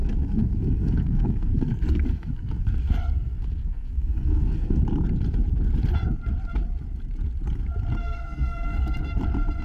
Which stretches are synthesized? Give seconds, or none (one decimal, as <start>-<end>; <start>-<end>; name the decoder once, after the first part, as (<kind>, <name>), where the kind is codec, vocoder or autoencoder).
0.0-4.8 (codec, SNAC); 8.0-9.2